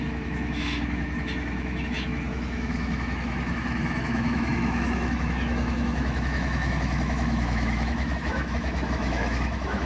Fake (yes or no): yes